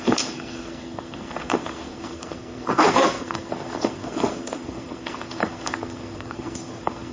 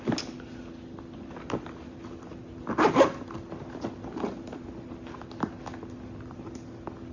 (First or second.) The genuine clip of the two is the second